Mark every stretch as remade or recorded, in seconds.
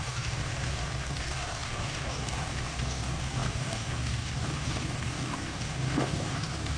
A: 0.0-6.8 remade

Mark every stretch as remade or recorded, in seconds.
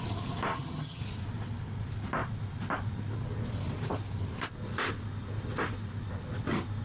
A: 0.0-0.5 recorded; 0.5-1.0 remade; 1.0-6.8 recorded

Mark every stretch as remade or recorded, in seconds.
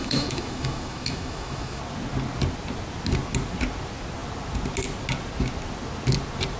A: 0.0-1.8 remade; 1.8-6.6 recorded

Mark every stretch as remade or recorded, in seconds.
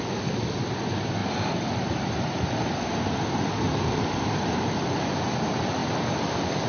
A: 0.0-1.2 recorded; 1.2-5.0 remade; 5.0-6.7 recorded